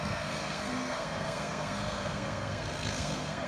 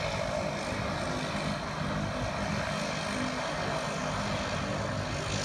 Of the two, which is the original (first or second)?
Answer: second